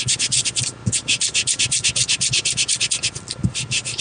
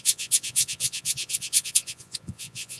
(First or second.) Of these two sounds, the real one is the first